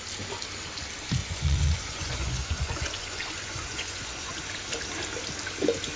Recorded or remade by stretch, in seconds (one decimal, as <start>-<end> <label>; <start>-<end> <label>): 0.0-1.2 recorded; 1.2-4.4 remade; 4.4-6.0 recorded